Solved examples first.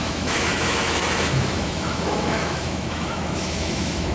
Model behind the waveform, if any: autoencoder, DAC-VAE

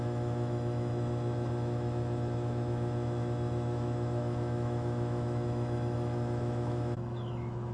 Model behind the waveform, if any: autoencoder, DAC-VAE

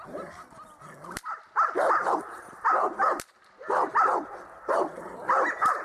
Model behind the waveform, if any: none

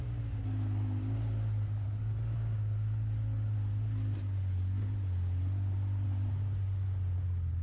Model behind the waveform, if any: none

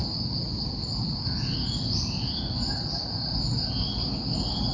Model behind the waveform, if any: none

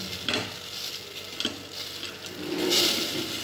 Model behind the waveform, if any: none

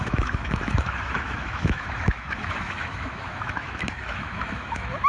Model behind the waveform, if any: autoencoder, DAC-VAE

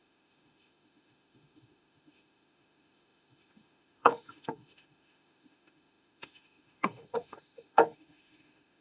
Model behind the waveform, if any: autoencoder, DAC-VAE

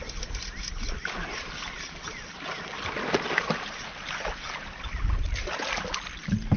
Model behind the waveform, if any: none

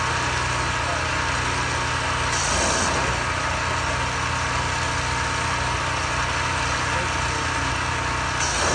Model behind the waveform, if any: none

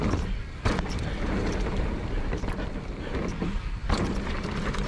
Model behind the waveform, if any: none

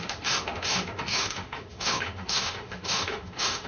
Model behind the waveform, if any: autoencoder, DAC-VAE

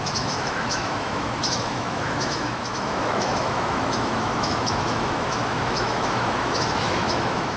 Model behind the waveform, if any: autoencoder, DAC-VAE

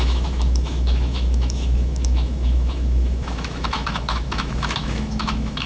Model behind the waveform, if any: autoencoder, DAC-VAE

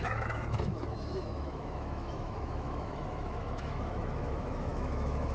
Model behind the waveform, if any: autoencoder, DAC-VAE